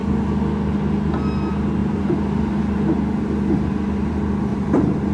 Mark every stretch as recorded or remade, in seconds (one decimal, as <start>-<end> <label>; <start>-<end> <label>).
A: 0.0-1.8 recorded; 1.8-2.6 remade; 2.6-4.5 recorded; 4.5-5.1 remade